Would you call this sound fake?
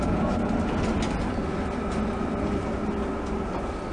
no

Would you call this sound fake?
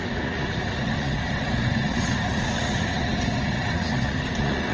yes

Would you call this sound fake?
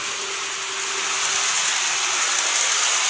no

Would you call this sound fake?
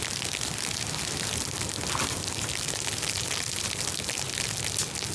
no